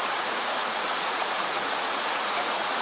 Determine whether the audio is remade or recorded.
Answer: remade